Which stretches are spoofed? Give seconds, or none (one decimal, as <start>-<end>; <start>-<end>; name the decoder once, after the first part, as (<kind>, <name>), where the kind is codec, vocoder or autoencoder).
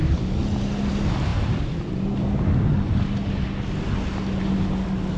none